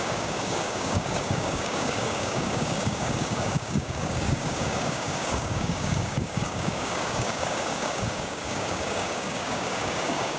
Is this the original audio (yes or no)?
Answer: no